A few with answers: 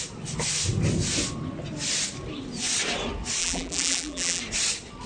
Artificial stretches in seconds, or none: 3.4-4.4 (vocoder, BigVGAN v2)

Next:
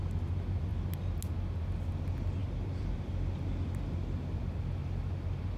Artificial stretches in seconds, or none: 2.4-4.6 (vocoder, BigVGAN v2)

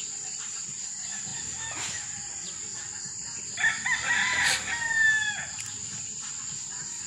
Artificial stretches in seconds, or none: 0.0-1.3 (vocoder, BigVGAN v2); 5.6-7.1